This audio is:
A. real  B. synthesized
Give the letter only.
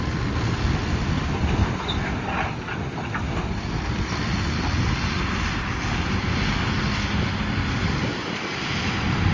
A